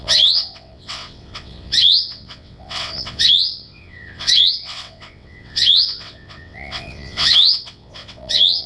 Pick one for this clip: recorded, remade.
remade